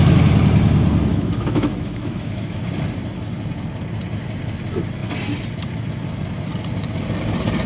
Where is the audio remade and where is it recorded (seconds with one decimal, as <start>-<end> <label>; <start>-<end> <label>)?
0.0-1.1 recorded; 1.1-2.6 remade; 2.6-7.7 recorded